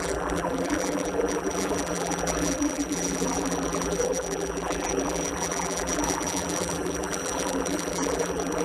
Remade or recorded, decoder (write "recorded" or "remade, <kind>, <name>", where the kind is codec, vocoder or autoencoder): remade, vocoder, BigVGAN v2